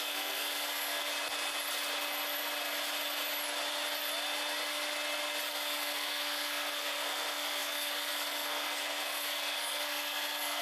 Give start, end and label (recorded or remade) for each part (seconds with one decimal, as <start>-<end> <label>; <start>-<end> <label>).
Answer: 0.0-1.1 remade; 1.1-5.5 recorded; 5.5-10.6 remade